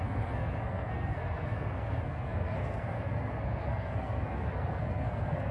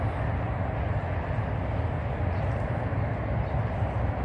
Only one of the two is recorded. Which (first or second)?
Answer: second